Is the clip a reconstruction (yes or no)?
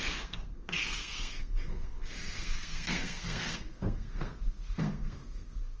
yes